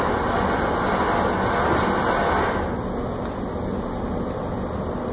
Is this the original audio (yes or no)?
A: yes